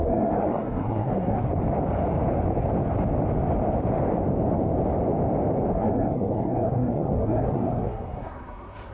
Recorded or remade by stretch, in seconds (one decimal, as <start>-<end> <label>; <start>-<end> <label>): 0.0-1.5 remade; 1.5-5.7 recorded; 5.7-8.9 remade